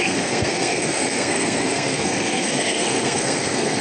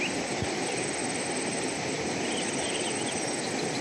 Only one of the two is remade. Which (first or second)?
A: first